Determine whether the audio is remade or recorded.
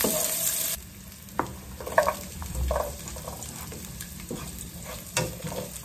remade